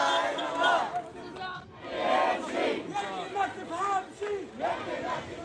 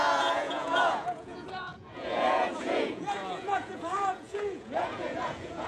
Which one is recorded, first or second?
first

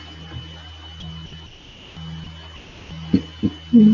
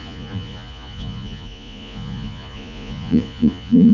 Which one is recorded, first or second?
first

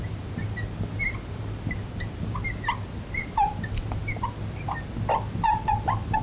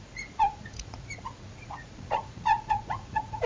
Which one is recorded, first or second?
first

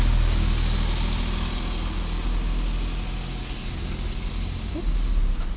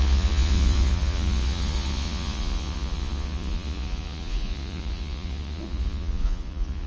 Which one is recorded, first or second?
first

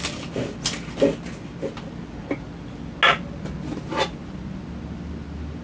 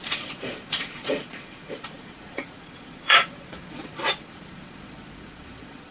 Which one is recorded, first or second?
first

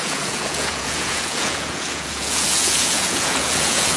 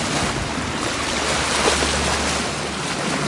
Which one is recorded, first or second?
second